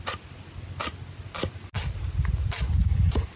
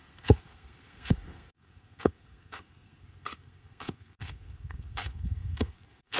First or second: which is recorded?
first